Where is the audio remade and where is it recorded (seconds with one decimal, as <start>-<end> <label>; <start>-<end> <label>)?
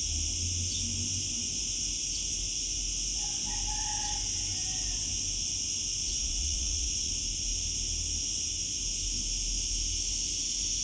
0.0-6.0 recorded; 6.0-7.1 remade; 7.1-10.8 recorded